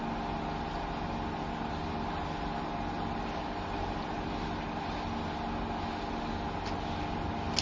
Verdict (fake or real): real